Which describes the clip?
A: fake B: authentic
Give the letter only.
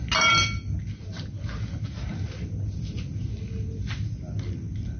B